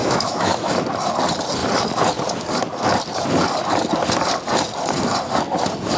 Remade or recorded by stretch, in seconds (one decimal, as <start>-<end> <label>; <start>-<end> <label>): 0.0-0.7 remade; 0.7-6.0 recorded

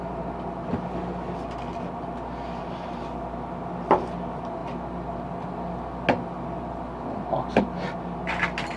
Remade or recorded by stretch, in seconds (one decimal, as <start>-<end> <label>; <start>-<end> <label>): 0.0-8.8 recorded

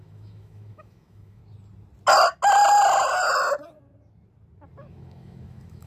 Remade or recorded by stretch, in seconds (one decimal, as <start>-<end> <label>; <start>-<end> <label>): 0.0-1.4 remade; 1.4-4.9 recorded; 4.9-5.9 remade

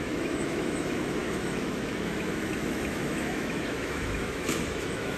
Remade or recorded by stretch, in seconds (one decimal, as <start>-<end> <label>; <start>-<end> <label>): 0.0-5.2 remade

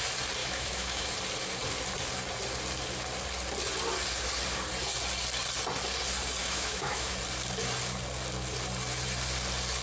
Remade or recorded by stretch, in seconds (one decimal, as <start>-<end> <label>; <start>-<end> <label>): 0.0-0.4 recorded; 0.4-1.1 remade; 1.1-6.4 recorded; 6.4-7.1 remade; 7.1-9.8 recorded

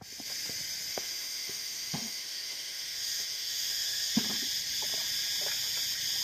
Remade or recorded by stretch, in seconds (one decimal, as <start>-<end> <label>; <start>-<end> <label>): 0.0-0.9 recorded; 0.9-4.2 remade; 4.2-6.2 recorded